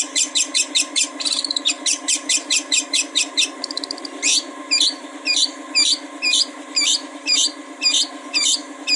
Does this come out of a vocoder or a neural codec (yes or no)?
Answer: yes